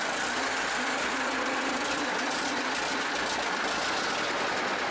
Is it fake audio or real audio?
real